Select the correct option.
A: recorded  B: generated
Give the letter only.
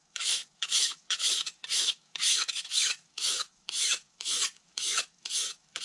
B